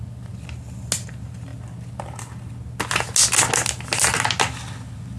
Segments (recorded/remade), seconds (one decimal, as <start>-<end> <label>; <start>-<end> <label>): 0.0-5.2 recorded